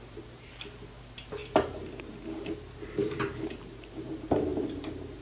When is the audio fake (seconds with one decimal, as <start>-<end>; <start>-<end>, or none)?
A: 0.0-1.4; 2.0-5.2